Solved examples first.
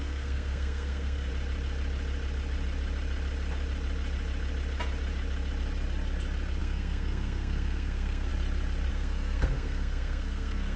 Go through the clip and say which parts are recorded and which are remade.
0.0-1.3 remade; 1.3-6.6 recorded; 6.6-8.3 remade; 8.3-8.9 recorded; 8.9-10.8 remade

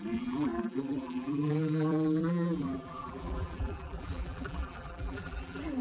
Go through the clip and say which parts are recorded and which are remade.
0.0-5.8 remade

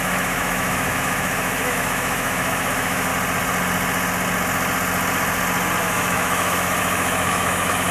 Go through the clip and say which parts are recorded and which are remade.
0.0-3.1 remade; 3.1-5.8 recorded; 5.8-7.9 remade